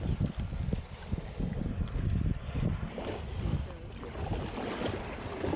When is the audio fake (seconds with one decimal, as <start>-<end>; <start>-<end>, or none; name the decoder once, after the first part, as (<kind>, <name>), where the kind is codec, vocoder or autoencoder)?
none